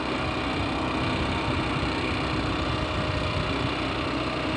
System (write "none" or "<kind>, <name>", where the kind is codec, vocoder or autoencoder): none